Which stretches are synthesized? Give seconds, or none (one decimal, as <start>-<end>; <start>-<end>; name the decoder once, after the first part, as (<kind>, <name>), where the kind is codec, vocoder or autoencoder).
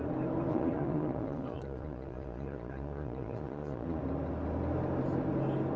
0.5-4.0 (vocoder, Vocos)